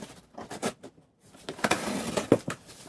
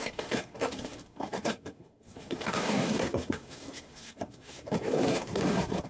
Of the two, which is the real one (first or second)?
first